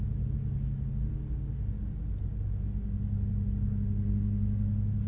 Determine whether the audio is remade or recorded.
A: recorded